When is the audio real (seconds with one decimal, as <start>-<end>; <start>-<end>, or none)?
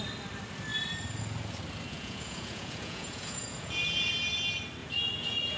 0.0-1.9; 4.1-4.8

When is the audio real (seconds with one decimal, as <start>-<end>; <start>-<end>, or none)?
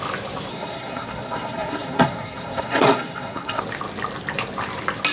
0.0-0.5; 3.6-5.1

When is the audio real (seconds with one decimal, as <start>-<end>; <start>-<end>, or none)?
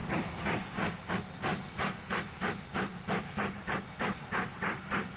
1.1-5.2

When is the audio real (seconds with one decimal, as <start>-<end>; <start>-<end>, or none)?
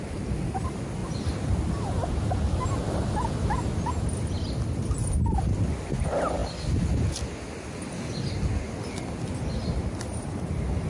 0.0-10.9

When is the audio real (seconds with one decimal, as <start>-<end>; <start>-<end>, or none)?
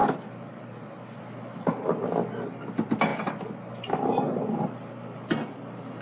0.0-6.0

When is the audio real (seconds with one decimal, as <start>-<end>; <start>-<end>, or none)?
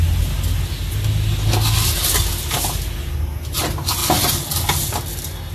0.0-2.3; 2.8-5.5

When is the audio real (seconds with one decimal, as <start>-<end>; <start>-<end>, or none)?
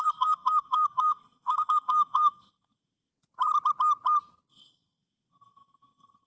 3.1-4.5